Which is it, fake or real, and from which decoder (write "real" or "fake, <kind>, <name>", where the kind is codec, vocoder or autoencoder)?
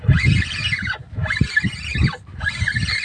real